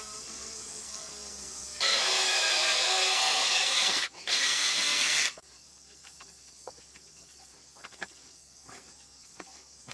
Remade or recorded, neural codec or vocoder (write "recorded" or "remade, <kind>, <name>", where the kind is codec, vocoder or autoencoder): remade, codec, SNAC